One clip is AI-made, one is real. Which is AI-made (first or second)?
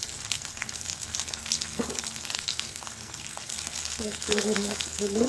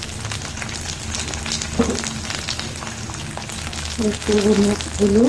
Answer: first